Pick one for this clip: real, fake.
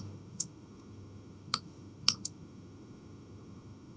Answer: fake